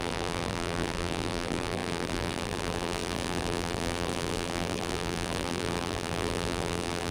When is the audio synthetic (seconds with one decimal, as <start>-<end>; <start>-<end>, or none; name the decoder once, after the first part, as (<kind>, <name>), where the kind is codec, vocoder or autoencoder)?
0.0-7.1 (vocoder, BigVGAN v2)